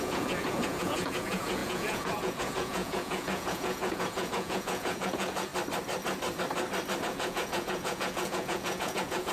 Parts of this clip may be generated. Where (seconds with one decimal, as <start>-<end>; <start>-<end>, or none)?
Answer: 0.0-5.5; 7.0-9.3